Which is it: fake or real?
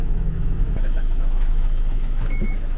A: fake